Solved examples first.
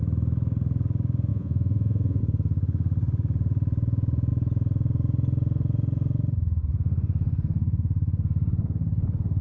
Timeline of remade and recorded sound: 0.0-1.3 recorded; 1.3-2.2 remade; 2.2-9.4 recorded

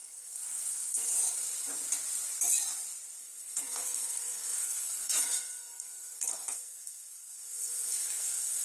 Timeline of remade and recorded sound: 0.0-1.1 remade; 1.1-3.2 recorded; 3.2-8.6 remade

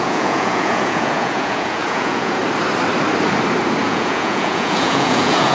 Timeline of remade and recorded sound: 0.0-2.4 remade; 2.4-3.8 recorded; 3.8-5.5 remade

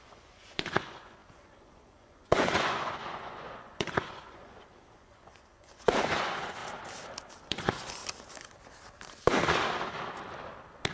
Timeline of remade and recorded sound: 0.0-6.6 remade; 6.6-7.4 recorded; 7.4-8.0 remade; 8.0-10.9 recorded

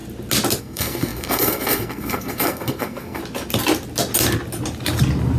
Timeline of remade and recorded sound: 0.0-0.6 recorded; 0.6-3.2 remade; 3.2-5.4 recorded

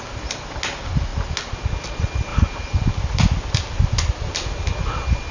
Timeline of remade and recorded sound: 0.0-5.3 recorded

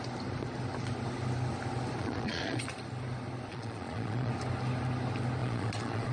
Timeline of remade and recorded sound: 0.0-2.0 recorded; 2.0-2.6 remade; 2.6-3.5 recorded; 3.5-4.3 remade; 4.3-5.4 recorded; 5.4-6.1 remade

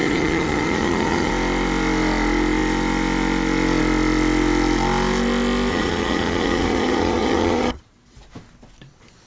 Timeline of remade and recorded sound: 0.0-1.3 remade; 1.3-5.7 recorded; 5.7-7.8 remade; 7.8-9.3 recorded